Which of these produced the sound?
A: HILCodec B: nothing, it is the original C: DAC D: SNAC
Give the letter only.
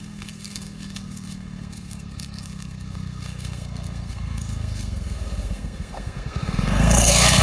D